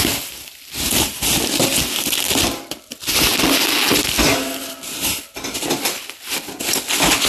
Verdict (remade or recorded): recorded